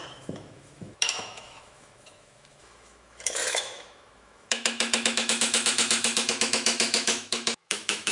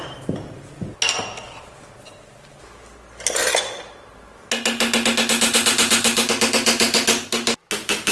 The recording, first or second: second